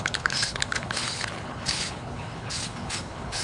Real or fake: fake